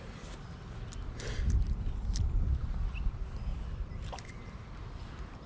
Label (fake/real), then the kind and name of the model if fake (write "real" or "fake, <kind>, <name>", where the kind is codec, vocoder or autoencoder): real